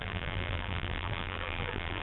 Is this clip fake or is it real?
fake